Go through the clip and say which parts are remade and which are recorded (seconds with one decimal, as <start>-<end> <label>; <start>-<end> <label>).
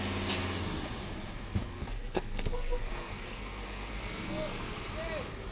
0.0-1.6 recorded; 1.6-4.9 remade; 4.9-5.5 recorded